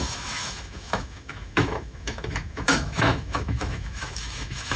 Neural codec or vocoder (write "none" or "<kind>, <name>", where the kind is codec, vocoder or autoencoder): autoencoder, DAC-VAE